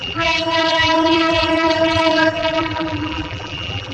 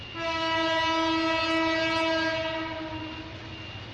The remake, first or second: first